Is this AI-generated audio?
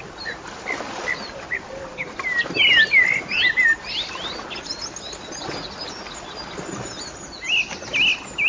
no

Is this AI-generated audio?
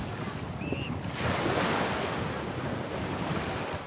no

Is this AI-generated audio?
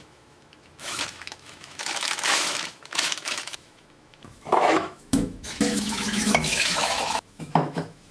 yes